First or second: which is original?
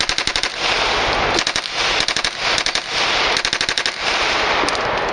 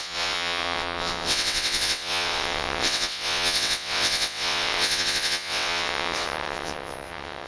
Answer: first